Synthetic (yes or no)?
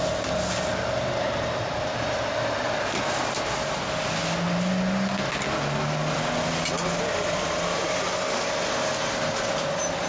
no